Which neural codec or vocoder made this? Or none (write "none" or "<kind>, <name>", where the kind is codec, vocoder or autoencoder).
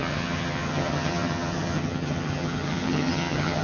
vocoder, HiFi-GAN